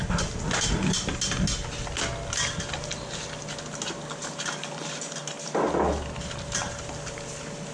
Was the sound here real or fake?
real